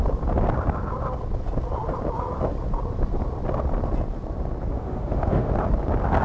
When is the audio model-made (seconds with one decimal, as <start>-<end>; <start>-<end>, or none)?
4.7-5.5